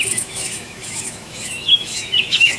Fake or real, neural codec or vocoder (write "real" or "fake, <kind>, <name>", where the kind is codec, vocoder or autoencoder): fake, autoencoder, DAC-VAE